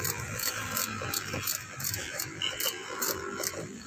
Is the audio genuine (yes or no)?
no